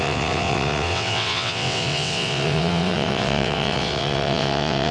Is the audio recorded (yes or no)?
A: no